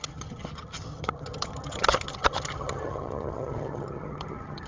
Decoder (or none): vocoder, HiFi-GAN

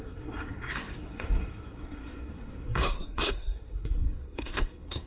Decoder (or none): codec, SNAC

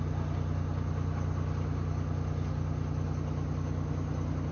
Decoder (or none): none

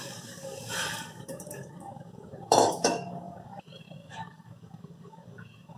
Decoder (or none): codec, DAC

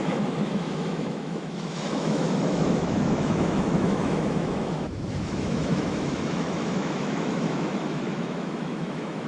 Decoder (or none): autoencoder, DAC-VAE